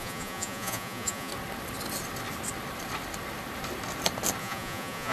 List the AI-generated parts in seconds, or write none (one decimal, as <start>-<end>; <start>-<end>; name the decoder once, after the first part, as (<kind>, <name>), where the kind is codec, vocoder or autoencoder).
0.0-1.3 (vocoder, Vocos); 4.4-5.1